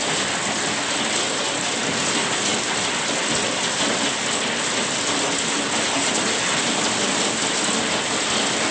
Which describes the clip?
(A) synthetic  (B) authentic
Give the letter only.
B